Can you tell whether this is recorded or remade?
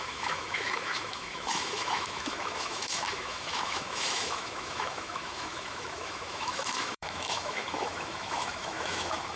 remade